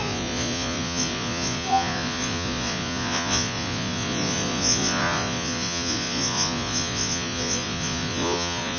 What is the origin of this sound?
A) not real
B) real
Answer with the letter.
A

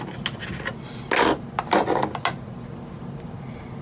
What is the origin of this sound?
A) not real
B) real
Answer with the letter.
B